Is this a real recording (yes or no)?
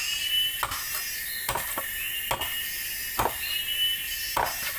yes